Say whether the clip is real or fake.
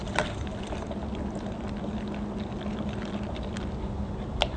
real